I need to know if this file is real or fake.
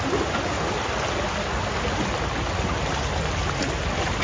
real